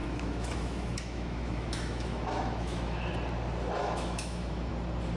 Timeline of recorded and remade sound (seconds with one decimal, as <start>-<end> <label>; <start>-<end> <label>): 0.0-3.1 remade; 3.1-3.8 recorded; 3.8-4.7 remade; 4.7-5.2 recorded

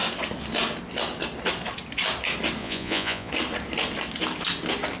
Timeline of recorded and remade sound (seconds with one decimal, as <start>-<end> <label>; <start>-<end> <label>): 0.0-2.6 recorded; 2.6-3.3 remade; 3.3-5.0 recorded

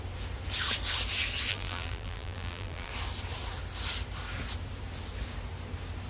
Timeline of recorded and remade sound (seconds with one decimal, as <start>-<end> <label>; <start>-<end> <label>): 0.0-1.5 recorded; 1.5-2.9 remade; 2.9-6.1 recorded

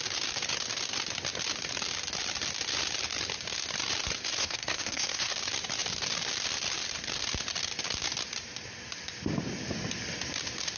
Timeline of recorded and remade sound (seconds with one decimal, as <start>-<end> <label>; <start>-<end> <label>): 0.0-4.4 recorded; 4.4-5.3 remade; 5.3-10.8 recorded

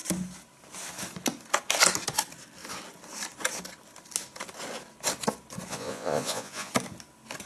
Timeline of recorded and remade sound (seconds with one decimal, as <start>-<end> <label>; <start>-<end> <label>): 0.0-5.7 recorded; 5.7-6.7 remade; 6.7-7.5 recorded